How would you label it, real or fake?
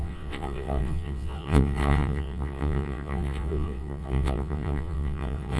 fake